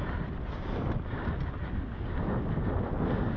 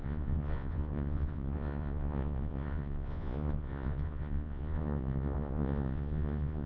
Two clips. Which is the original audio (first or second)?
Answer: first